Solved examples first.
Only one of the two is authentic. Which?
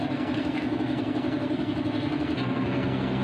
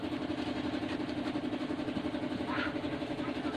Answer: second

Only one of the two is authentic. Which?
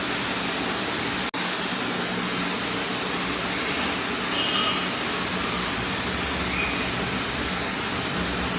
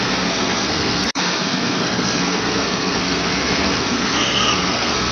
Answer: first